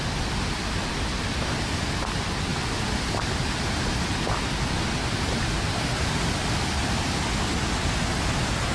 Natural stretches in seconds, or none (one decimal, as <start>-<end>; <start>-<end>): 0.0-8.7